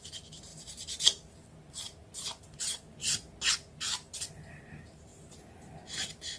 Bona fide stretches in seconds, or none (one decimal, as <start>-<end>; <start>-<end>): 0.5-2.4; 3.0-4.5